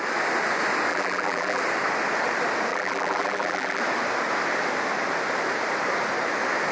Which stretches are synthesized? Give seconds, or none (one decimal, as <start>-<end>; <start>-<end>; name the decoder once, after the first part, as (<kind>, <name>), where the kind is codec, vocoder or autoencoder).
0.9-1.6 (vocoder, BigVGAN v2); 2.7-3.8